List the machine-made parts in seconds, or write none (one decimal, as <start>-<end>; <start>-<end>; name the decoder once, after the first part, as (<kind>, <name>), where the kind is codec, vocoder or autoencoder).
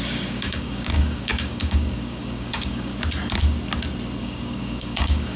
0.0-2.9 (codec, DAC); 4.2-5.4